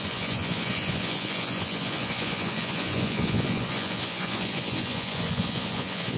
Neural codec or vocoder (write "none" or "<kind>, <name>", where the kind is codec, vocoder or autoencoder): vocoder, Vocos